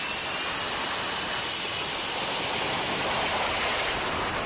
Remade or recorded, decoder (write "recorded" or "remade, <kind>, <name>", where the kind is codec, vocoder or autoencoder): recorded